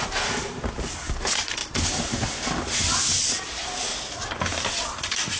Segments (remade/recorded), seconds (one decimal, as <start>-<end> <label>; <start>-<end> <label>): 0.0-5.4 recorded